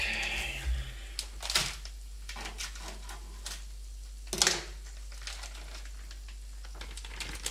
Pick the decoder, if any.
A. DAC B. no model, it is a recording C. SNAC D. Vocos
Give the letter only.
B